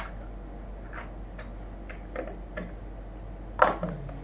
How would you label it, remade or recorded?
recorded